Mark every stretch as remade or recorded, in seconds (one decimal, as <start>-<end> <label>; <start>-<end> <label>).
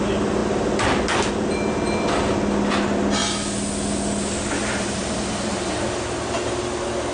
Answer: 0.0-7.1 recorded